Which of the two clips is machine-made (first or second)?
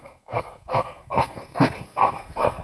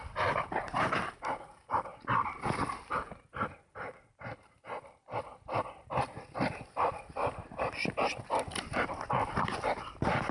first